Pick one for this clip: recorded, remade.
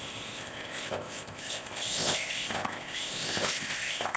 remade